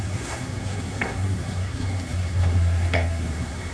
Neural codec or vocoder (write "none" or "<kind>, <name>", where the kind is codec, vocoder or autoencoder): codec, SNAC